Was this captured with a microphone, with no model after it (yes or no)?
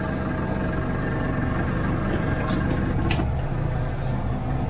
yes